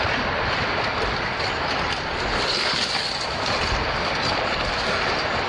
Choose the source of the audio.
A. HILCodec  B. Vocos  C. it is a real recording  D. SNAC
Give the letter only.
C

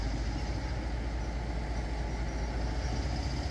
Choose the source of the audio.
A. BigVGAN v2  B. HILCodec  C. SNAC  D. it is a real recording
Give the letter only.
D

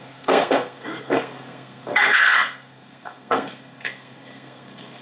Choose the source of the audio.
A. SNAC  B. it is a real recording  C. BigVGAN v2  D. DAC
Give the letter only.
A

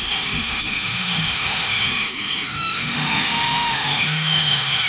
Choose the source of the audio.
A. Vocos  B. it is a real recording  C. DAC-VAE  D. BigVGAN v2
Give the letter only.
C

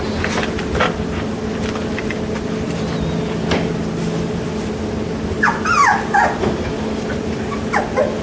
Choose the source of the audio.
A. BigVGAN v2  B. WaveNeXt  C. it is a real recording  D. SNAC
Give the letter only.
C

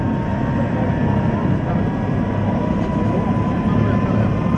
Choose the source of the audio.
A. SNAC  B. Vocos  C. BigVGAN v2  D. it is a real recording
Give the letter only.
D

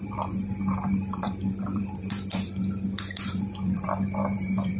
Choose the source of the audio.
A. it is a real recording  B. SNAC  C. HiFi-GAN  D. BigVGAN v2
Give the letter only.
D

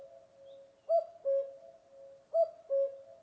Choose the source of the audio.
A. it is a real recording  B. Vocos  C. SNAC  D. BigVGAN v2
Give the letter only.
A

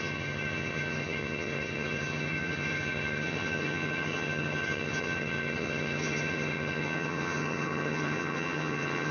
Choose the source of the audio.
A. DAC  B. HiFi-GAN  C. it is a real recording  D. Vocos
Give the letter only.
B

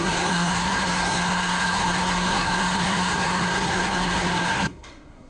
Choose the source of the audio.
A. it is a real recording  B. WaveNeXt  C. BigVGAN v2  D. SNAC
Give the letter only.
D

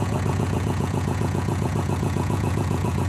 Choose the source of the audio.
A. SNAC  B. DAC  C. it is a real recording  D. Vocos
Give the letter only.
D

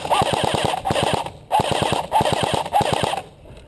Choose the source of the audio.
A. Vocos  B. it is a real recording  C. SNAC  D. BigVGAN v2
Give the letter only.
B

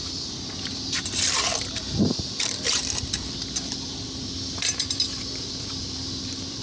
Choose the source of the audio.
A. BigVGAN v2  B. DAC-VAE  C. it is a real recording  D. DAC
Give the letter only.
A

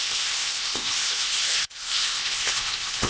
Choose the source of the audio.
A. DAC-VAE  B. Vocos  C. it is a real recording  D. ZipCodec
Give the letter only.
D